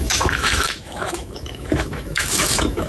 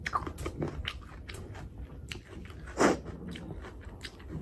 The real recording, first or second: second